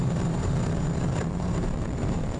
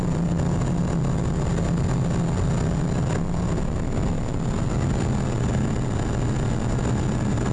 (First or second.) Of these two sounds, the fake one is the first